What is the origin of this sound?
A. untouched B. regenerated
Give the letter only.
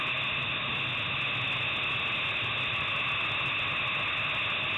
A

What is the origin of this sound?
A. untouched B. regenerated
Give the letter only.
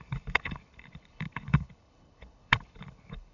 B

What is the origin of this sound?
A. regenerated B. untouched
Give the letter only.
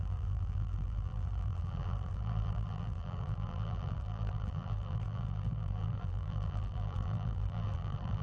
A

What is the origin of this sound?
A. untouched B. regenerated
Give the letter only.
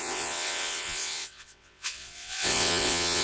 B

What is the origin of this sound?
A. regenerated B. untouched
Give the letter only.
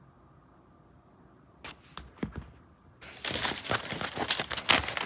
B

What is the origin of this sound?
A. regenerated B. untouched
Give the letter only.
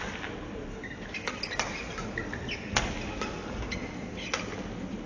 B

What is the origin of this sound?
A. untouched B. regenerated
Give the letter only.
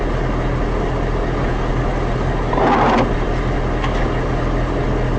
A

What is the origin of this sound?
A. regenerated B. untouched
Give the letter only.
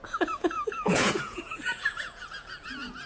A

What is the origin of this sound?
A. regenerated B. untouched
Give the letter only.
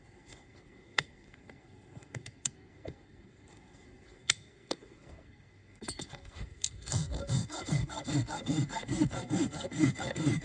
A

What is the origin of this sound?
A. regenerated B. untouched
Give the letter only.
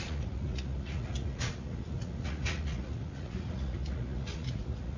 A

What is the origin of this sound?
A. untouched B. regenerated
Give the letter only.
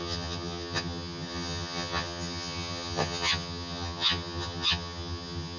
B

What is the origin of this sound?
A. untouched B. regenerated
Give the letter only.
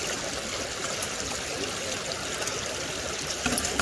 A